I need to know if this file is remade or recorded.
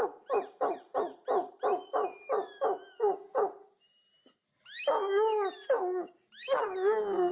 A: recorded